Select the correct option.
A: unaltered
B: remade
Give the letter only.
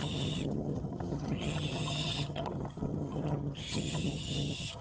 B